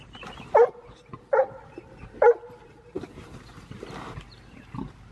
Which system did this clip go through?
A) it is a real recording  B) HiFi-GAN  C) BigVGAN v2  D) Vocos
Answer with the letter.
C